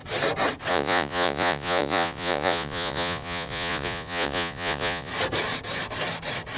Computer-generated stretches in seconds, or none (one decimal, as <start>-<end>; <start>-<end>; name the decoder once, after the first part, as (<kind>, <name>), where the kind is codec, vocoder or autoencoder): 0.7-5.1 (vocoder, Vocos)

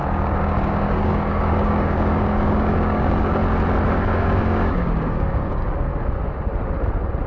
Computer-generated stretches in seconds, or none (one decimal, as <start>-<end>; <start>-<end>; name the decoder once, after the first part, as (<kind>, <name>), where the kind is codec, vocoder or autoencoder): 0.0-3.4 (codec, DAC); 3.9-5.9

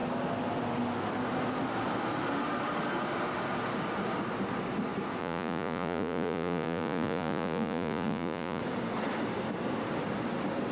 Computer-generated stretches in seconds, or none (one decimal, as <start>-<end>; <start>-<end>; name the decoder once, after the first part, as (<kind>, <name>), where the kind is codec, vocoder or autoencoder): 5.2-8.6 (vocoder, Vocos)